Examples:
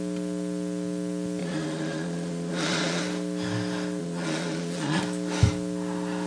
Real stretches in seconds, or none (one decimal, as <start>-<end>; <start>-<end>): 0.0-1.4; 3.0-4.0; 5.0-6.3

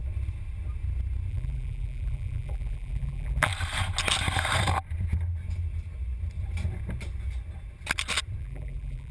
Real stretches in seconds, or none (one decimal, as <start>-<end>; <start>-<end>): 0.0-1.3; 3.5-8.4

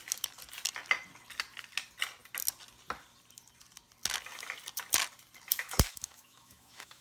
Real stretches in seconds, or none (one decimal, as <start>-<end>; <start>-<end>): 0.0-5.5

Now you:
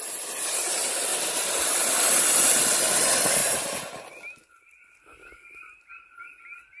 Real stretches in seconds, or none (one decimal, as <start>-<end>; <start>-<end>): 0.0-3.4; 4.1-6.8